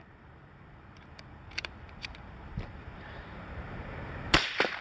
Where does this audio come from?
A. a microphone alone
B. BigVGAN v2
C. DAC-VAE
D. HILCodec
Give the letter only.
B